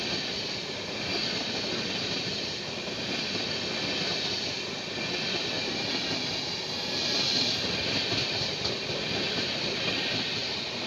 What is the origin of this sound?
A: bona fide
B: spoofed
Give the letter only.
A